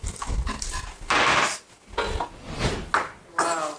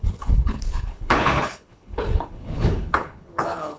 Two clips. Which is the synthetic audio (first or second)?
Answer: second